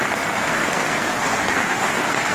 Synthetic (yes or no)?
yes